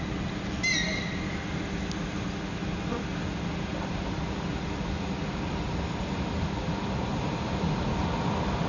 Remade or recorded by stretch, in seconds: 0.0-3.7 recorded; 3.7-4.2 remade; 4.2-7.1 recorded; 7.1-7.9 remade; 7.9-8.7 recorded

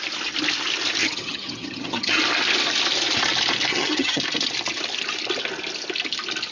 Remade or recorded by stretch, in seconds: 0.0-1.0 recorded; 1.0-2.2 remade; 2.2-3.7 recorded; 3.7-4.2 remade; 4.2-6.5 recorded

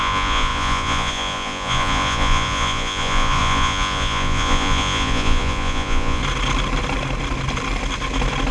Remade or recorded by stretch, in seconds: 0.0-6.2 remade; 6.2-8.5 recorded

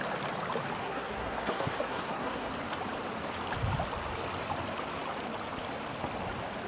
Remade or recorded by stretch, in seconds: 0.0-0.8 recorded; 0.8-2.5 remade; 2.5-6.7 recorded